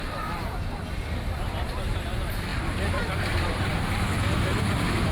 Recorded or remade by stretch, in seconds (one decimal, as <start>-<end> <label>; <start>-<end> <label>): 0.0-5.1 recorded